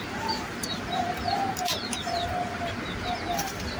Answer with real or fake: real